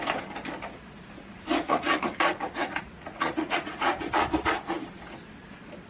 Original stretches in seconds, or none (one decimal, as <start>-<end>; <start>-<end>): 0.0-1.6; 4.8-5.9